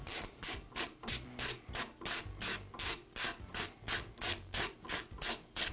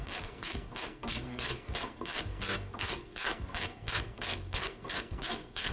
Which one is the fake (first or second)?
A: second